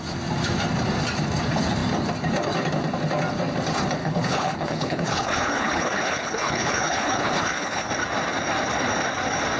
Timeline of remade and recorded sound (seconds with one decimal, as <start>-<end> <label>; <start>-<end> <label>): 0.0-4.0 recorded; 4.0-7.9 remade; 7.9-9.6 recorded